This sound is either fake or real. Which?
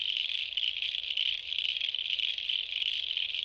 real